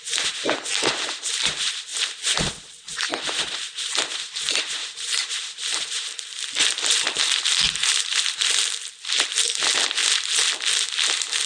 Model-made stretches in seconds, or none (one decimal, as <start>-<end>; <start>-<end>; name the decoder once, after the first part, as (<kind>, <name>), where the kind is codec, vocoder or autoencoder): 1.9-2.5 (vocoder, BigVGAN v2); 2.9-4.1; 4.8-7.2

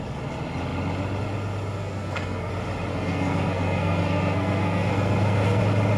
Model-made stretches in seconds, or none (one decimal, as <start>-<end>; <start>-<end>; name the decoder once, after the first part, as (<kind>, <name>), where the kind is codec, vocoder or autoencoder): 1.8-2.5 (codec, SNAC); 2.9-5.6

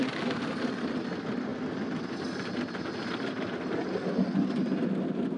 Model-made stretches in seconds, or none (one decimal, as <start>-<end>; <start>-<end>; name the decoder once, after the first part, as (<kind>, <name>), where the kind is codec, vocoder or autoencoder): none

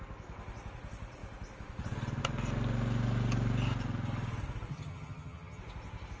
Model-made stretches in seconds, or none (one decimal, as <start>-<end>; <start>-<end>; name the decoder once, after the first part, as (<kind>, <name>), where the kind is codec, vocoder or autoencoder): 4.7-5.6 (vocoder, HiFi-GAN)

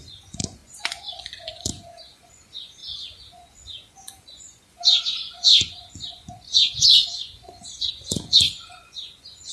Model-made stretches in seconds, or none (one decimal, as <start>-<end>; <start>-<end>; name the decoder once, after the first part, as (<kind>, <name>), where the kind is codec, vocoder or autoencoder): 0.0-9.5 (vocoder, Vocos)